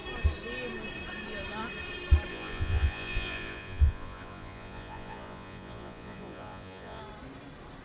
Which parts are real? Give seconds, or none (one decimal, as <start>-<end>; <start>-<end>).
0.0-2.3; 7.0-7.8